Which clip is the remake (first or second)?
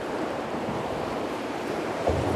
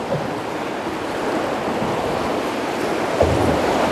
first